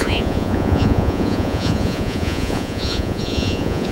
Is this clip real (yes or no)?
no